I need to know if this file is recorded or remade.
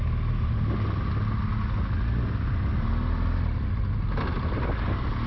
recorded